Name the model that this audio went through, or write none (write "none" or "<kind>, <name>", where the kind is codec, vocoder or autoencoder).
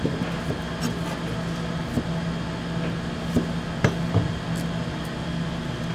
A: none